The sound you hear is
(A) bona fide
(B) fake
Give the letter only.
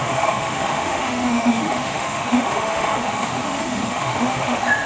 B